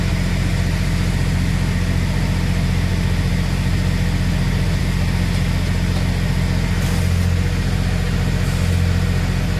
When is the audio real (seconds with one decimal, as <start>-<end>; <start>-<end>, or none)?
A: 0.0-9.6